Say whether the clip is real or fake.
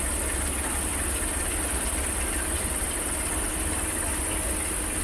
real